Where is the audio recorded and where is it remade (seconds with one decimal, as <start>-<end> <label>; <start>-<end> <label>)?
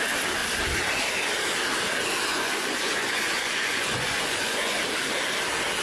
0.0-2.3 recorded; 2.3-4.8 remade; 4.8-5.8 recorded